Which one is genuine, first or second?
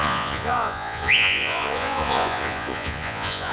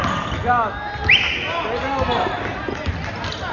second